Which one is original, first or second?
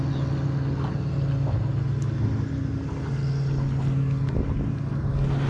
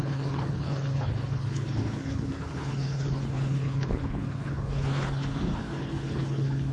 first